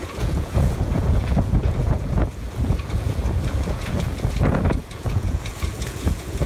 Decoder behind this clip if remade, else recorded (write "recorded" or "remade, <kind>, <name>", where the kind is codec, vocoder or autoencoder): remade, vocoder, Vocos